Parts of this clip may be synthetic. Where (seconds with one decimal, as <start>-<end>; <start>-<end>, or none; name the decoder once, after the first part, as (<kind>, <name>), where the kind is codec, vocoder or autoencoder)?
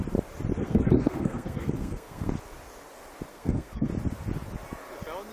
0.6-2.3 (codec, SNAC); 3.3-3.9